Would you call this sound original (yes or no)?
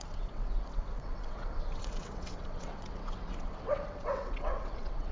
no